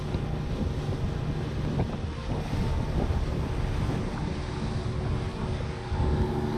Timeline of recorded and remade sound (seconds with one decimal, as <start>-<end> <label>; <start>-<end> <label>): 0.0-5.3 recorded; 5.3-6.6 remade